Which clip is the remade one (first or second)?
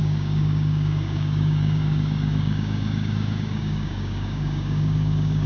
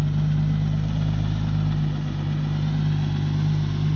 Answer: first